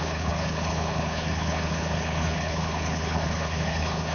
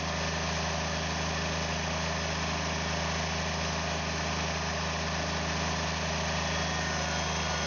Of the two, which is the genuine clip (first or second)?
second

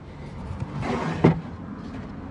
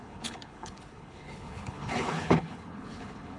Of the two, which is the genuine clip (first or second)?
first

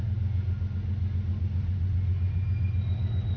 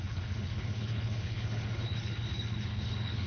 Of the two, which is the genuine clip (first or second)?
first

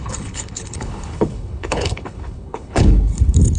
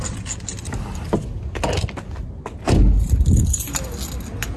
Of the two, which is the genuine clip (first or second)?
second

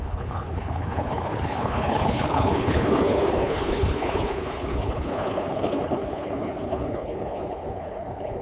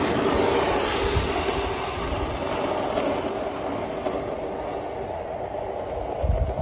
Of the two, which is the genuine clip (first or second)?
second